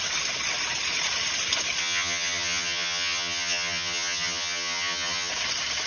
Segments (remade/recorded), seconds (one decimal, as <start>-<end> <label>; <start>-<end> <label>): 0.0-1.8 recorded; 1.8-5.3 remade; 5.3-5.9 recorded